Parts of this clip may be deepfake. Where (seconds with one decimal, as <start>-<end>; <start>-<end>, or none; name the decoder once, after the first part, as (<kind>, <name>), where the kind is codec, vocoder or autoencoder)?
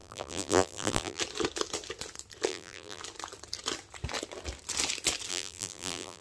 0.0-1.2 (vocoder, BigVGAN v2); 2.5-3.0; 5.3-6.2